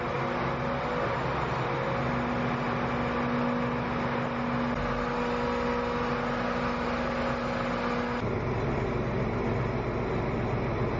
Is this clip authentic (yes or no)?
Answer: yes